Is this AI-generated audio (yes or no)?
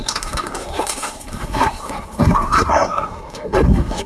yes